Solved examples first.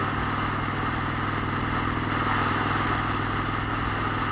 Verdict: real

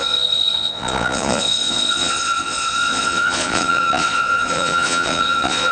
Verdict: fake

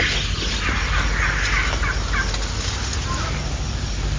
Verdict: real